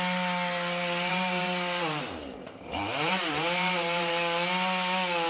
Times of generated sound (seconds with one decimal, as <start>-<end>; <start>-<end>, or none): 1.1-4.1